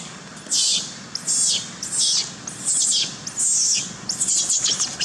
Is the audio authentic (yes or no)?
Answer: yes